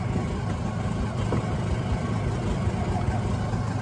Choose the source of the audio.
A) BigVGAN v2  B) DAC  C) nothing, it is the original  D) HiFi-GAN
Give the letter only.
C